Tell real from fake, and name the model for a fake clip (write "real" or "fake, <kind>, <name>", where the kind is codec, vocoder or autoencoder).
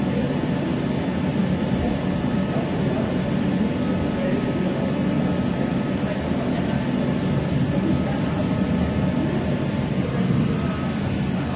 real